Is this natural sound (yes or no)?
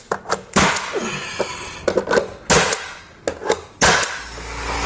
yes